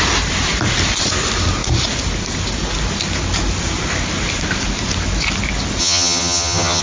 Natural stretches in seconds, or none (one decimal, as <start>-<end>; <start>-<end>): 0.0-5.8